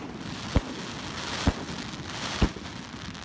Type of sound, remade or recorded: recorded